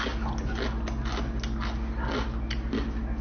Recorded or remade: recorded